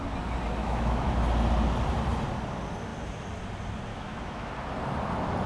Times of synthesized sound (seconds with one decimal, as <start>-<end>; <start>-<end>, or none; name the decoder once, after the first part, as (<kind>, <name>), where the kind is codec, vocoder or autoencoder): 0.6-1.1 (autoencoder, DAC-VAE); 3.9-4.5